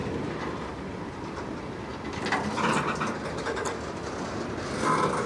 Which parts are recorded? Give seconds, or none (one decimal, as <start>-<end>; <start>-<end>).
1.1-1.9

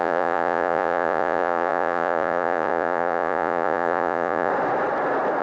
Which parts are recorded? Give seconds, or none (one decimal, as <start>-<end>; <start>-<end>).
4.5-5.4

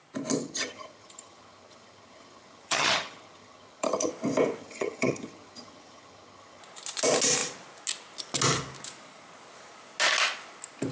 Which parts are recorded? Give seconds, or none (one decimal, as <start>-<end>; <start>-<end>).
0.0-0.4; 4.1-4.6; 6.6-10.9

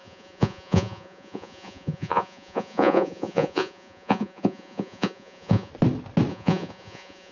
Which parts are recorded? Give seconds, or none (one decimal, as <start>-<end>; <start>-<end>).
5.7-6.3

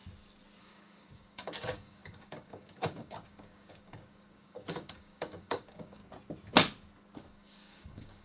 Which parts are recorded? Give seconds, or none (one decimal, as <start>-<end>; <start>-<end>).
0.0-0.6; 6.0-7.2

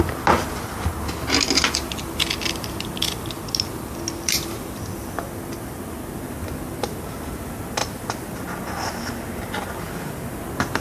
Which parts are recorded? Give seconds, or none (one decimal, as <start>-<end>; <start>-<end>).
0.0-10.8